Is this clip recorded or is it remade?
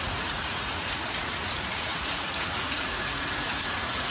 remade